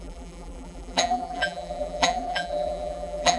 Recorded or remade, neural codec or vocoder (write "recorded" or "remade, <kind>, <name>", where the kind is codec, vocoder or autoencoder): remade, vocoder, BigVGAN v2